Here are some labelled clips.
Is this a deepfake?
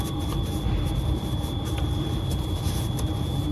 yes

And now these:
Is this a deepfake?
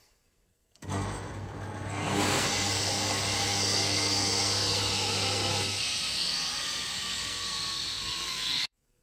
yes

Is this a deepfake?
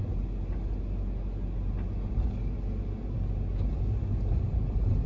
no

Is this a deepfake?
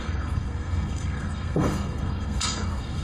yes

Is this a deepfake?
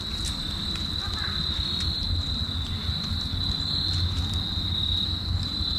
no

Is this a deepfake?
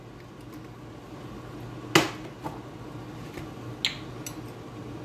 no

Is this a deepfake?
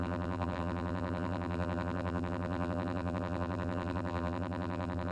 yes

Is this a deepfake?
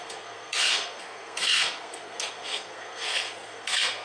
yes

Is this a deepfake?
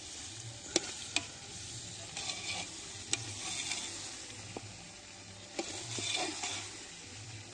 no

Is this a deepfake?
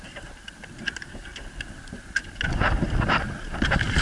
no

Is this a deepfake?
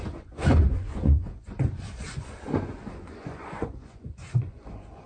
yes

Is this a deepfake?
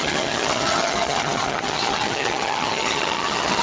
yes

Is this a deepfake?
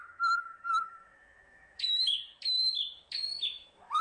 yes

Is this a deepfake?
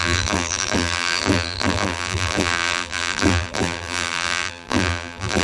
yes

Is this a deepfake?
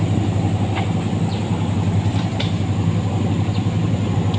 no